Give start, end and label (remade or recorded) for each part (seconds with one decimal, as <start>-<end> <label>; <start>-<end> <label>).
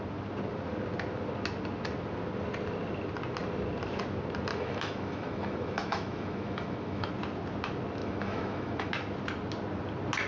0.0-4.5 recorded; 4.5-7.1 remade; 7.1-8.0 recorded; 8.0-8.9 remade; 8.9-10.3 recorded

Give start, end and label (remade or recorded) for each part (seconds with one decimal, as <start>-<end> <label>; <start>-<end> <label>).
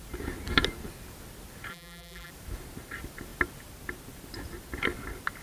0.0-1.7 recorded; 1.7-2.3 remade; 2.3-5.4 recorded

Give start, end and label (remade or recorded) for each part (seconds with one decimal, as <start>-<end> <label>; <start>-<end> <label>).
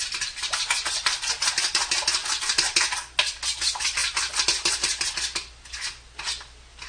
0.0-6.9 recorded